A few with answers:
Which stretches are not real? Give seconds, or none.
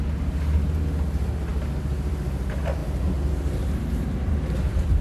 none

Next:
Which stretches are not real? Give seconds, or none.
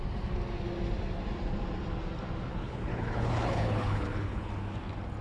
2.5-4.5 (codec, HILCodec)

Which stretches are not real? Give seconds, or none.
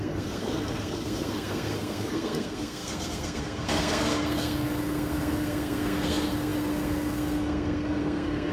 0.0-8.5 (codec, SNAC)